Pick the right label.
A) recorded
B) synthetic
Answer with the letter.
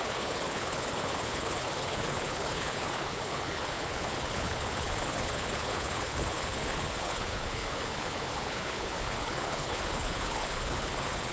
B